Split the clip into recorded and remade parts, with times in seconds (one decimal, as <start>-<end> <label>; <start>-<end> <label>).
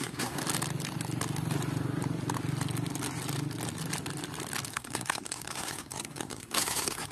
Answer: 0.0-0.4 remade; 0.4-4.7 recorded; 4.7-7.1 remade